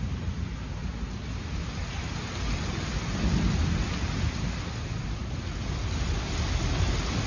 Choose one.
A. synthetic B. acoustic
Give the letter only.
B